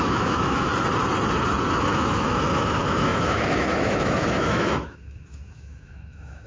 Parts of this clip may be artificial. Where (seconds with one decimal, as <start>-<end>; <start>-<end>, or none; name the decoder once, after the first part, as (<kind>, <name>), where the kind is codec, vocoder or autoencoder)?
0.0-0.7 (autoencoder, DAC-VAE); 1.8-6.5